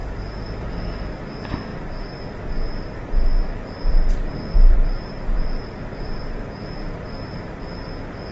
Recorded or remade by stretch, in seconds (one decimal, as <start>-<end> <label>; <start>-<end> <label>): 0.0-0.7 remade; 0.7-1.7 recorded; 1.7-6.7 remade; 6.7-8.3 recorded